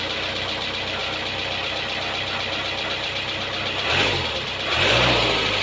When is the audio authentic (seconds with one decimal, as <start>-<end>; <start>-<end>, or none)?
0.0-5.6